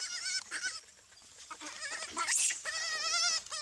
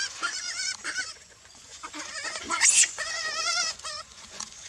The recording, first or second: first